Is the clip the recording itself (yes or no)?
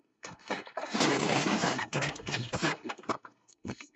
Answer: no